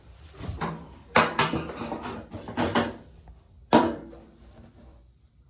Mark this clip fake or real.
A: fake